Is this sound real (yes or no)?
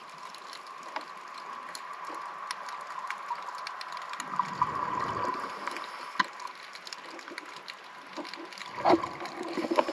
yes